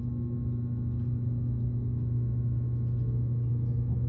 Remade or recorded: recorded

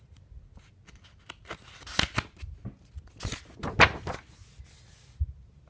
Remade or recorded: recorded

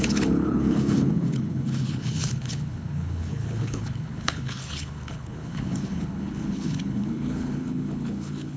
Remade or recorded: remade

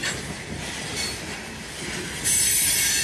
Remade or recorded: recorded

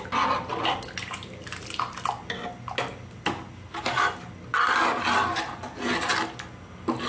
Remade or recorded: recorded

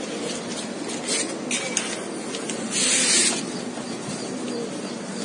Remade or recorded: recorded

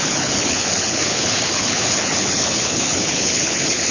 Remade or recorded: remade